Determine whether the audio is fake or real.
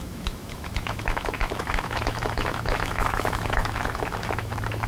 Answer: fake